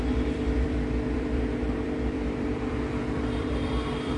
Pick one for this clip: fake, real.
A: fake